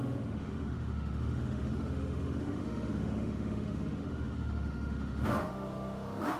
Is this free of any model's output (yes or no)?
no